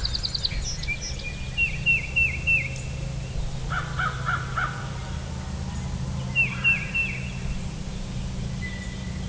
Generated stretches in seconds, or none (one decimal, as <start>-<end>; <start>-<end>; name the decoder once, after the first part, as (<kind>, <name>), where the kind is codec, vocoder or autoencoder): none